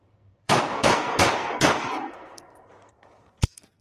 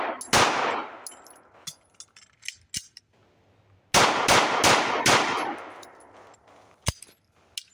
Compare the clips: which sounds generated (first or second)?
first